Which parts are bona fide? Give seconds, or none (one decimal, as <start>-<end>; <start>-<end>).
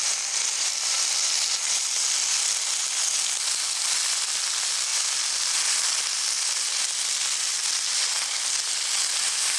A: 1.2-4.9; 5.5-9.6